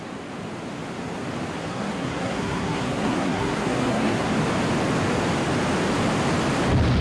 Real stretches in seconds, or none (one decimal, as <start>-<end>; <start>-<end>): 0.0-1.7; 4.3-7.0